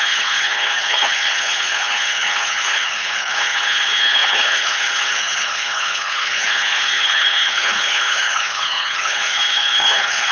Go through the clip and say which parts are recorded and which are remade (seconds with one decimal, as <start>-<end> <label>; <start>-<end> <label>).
0.0-10.3 remade